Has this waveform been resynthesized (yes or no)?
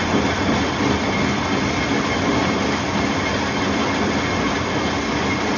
no